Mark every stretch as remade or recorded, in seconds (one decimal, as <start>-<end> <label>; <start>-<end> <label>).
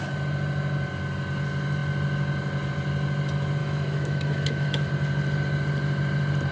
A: 0.0-3.6 recorded; 3.6-4.9 remade; 4.9-6.5 recorded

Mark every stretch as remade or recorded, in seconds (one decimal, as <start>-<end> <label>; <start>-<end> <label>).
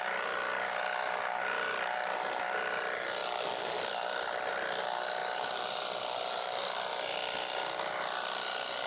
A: 0.0-8.9 recorded